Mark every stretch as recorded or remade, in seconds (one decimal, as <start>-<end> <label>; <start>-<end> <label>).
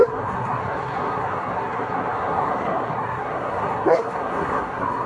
0.0-5.1 remade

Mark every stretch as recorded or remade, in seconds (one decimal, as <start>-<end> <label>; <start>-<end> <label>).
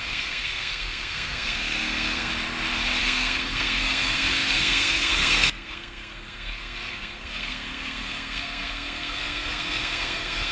0.0-2.3 remade; 2.3-3.0 recorded; 3.0-10.5 remade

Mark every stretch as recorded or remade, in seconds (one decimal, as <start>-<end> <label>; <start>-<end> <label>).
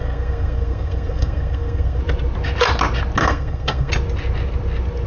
0.0-2.0 remade; 2.0-3.2 recorded; 3.2-3.9 remade; 3.9-5.1 recorded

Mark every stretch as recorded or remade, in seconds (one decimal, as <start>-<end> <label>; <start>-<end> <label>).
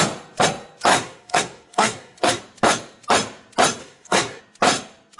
0.0-0.9 recorded; 0.9-2.4 remade; 2.4-3.8 recorded; 3.8-4.4 remade; 4.4-5.2 recorded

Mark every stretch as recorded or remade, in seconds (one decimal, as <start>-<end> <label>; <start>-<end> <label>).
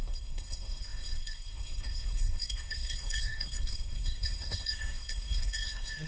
0.0-6.1 remade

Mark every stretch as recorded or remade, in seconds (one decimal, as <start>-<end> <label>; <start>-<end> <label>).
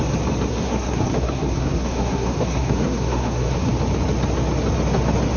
0.0-0.5 recorded; 0.5-3.7 remade; 3.7-5.4 recorded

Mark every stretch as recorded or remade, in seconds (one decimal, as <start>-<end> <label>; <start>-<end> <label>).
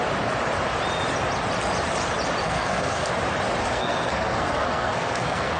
0.0-2.4 recorded; 2.4-3.1 remade; 3.1-3.6 recorded; 3.6-5.6 remade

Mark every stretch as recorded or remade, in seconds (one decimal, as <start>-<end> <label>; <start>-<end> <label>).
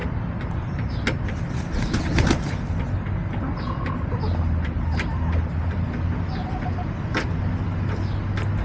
0.0-8.6 recorded